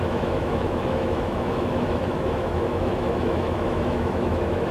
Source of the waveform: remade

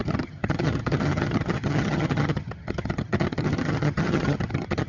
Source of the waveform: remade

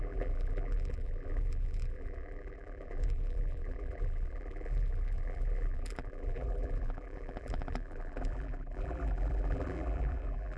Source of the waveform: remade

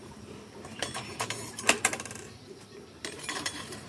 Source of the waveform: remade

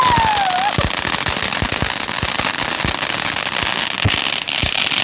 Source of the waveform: recorded